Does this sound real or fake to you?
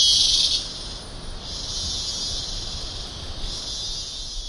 real